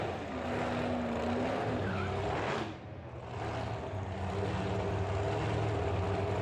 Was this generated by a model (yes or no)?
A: no